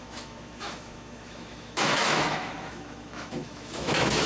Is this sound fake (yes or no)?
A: yes